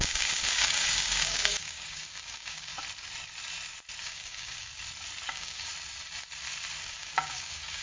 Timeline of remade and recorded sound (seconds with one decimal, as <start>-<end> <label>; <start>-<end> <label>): 0.0-2.7 remade; 2.7-4.0 recorded; 4.0-4.7 remade; 4.7-5.3 recorded; 5.3-5.7 remade; 5.7-6.8 recorded; 6.8-7.8 remade